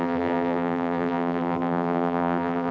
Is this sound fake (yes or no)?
yes